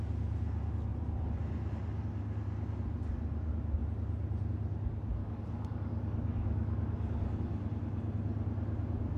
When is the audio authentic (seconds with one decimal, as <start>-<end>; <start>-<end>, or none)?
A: 0.0-5.2; 7.3-9.2